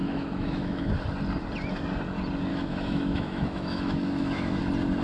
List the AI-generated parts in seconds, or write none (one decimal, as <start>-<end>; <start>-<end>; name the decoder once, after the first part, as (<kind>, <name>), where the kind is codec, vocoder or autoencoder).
0.0-0.9 (autoencoder, DAC-VAE); 2.5-4.6

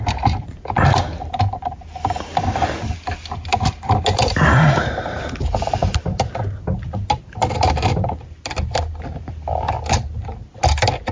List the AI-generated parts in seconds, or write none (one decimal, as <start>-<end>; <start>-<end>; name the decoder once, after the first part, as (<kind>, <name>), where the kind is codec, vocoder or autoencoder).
none

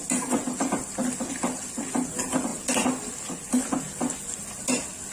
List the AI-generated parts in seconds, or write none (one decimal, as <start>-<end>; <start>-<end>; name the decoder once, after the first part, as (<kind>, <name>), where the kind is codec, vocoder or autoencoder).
none

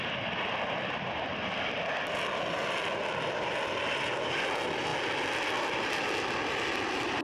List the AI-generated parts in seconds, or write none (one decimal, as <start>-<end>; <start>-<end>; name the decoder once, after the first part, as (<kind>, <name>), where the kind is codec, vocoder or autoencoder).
none